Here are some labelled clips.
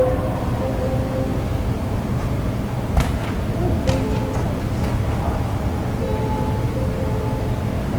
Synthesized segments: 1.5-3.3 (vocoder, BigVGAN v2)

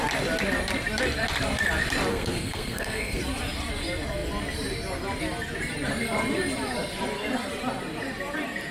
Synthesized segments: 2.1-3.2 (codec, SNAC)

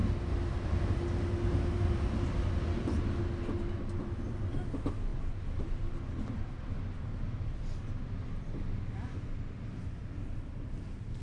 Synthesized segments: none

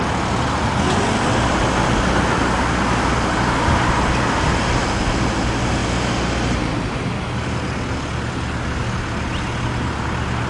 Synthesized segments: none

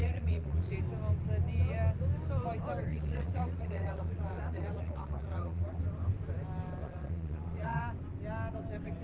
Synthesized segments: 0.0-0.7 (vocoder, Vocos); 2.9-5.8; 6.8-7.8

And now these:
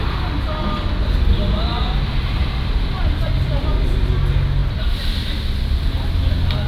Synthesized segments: 2.4-3.7 (vocoder, BigVGAN v2); 4.6-5.8

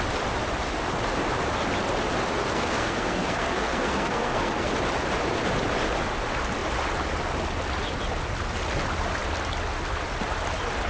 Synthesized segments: 2.4-4.7 (codec, SNAC)